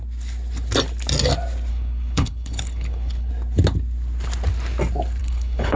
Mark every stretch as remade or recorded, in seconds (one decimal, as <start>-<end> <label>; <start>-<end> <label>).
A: 0.0-1.7 recorded; 1.7-3.3 remade; 3.3-5.2 recorded; 5.2-5.8 remade